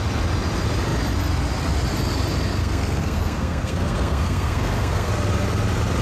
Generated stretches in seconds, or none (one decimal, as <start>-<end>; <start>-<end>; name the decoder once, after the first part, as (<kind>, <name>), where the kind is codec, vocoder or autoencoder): 2.6-5.1 (codec, SNAC)